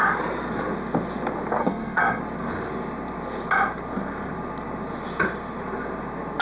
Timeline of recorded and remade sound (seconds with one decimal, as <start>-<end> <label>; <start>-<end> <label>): 0.0-1.6 recorded; 1.6-2.2 remade; 2.2-6.4 recorded